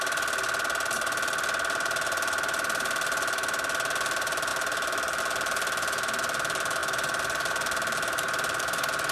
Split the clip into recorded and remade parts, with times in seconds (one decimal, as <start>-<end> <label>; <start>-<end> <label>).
0.0-6.8 recorded; 6.8-8.6 remade; 8.6-9.1 recorded